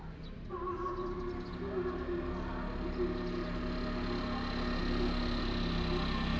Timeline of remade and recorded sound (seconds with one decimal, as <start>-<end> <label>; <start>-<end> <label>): 0.0-6.4 recorded